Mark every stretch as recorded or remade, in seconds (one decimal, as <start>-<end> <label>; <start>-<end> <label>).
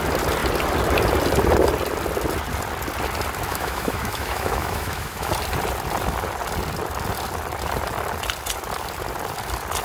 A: 0.0-3.5 recorded; 3.5-5.3 remade; 5.3-9.8 recorded